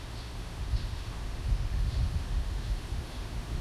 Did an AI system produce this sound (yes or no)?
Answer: yes